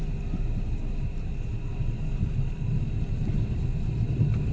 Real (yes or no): yes